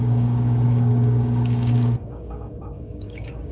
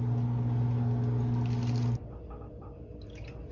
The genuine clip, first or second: second